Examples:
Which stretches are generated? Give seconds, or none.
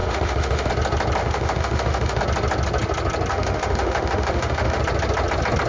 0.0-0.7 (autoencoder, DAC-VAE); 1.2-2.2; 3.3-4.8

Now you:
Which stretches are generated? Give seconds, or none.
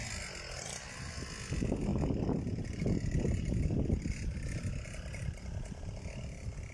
none